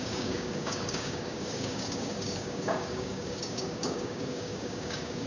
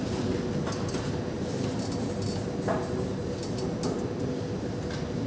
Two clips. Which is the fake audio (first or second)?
first